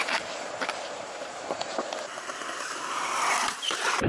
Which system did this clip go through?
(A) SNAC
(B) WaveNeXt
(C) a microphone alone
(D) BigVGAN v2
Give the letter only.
D